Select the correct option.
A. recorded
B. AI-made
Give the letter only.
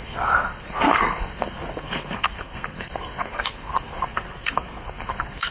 B